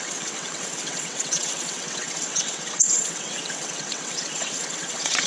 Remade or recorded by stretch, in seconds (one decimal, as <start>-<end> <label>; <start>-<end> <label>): 0.0-5.3 remade